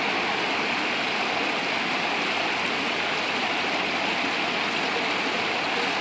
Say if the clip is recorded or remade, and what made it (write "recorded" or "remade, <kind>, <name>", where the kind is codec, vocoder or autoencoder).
recorded